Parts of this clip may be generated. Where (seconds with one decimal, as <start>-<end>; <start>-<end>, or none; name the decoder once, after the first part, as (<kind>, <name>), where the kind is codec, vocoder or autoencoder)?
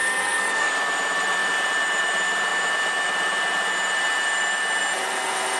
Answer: 0.0-0.7 (codec, SNAC)